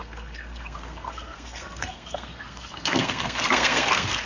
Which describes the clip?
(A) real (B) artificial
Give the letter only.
B